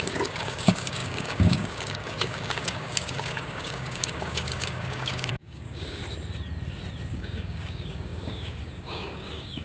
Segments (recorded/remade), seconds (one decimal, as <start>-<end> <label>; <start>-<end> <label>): 0.0-6.0 remade; 6.0-7.1 recorded; 7.1-9.6 remade